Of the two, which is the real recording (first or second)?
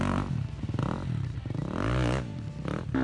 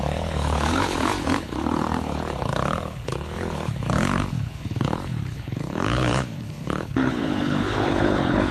first